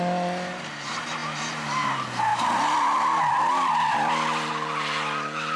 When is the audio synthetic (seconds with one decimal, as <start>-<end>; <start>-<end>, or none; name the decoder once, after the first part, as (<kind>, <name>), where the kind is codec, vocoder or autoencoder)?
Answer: 2.3-4.5 (vocoder, BigVGAN v2)